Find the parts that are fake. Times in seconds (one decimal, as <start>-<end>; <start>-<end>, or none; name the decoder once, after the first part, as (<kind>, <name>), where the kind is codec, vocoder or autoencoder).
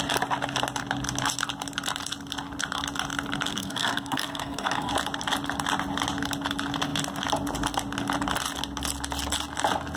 3.5-4.9 (codec, SNAC)